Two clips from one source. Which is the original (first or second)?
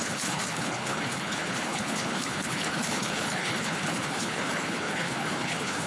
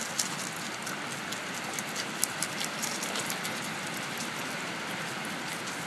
second